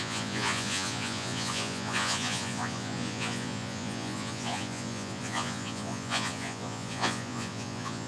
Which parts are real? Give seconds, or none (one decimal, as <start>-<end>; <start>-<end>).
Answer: none